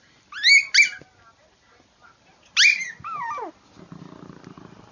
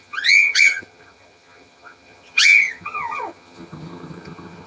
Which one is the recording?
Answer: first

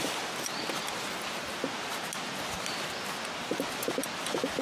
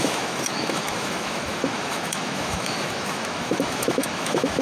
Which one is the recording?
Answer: first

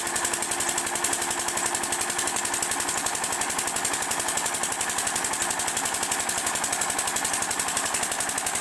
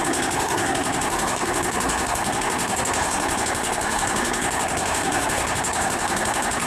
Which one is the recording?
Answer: first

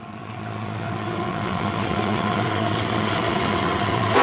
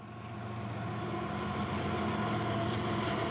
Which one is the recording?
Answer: second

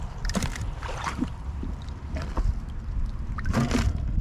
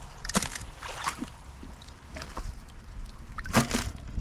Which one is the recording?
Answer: second